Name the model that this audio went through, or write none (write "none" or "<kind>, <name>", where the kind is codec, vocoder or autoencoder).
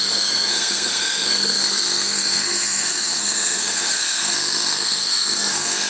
codec, SNAC